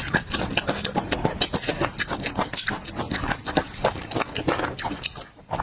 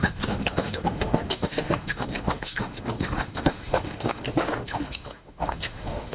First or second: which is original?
first